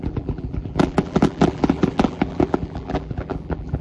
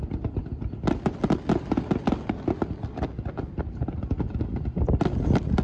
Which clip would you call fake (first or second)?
first